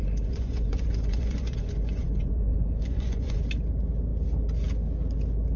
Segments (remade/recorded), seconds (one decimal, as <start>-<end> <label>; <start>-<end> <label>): 0.0-3.4 remade; 3.4-5.6 recorded